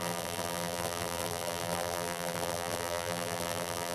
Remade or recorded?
remade